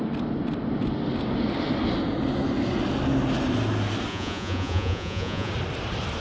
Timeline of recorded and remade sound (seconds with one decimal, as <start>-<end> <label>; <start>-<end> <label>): 0.0-4.1 recorded; 4.1-5.5 remade; 5.5-6.2 recorded